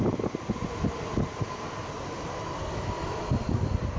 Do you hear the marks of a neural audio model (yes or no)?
no